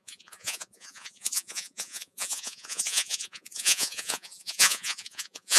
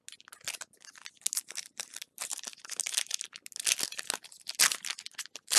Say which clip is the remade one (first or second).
first